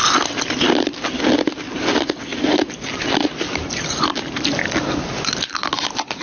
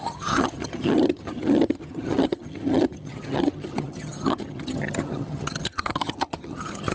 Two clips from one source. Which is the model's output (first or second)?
second